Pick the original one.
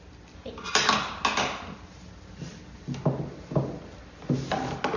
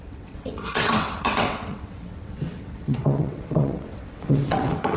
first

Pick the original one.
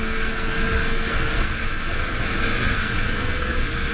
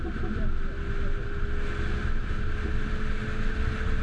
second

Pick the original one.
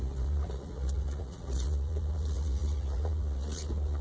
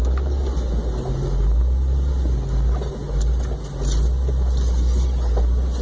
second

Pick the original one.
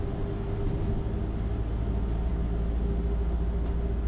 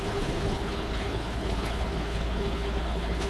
first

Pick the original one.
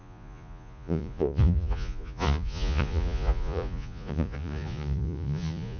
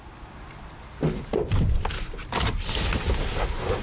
second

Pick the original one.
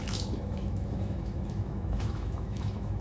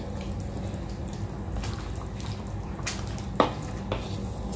second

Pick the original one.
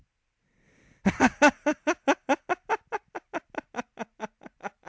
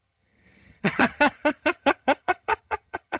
first